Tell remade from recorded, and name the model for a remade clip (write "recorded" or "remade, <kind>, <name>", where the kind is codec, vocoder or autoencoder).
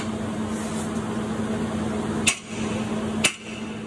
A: recorded